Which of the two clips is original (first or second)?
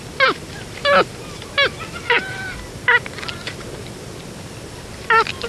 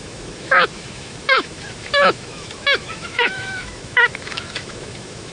first